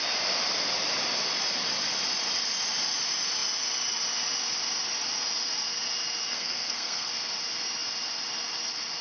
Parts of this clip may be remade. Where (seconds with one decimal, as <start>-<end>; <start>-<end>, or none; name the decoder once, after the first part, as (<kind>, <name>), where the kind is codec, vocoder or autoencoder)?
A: 6.3-7.1 (codec, SNAC)